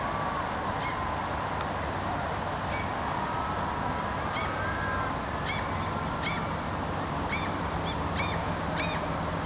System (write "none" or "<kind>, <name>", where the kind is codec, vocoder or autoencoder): none